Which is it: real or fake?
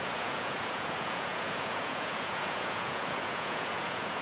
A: fake